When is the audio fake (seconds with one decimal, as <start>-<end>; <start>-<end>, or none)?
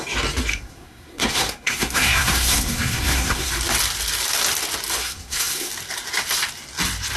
0.5-3.5; 5.0-5.7